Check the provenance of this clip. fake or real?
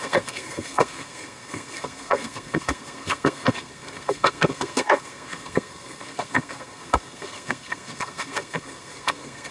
fake